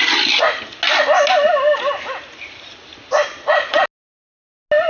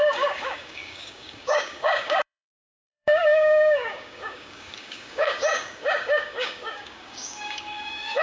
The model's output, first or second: second